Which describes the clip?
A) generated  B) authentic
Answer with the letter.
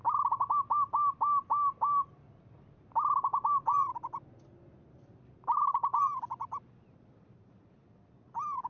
B